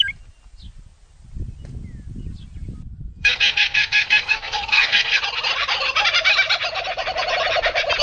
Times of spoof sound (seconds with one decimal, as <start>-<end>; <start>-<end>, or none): 3.1-5.2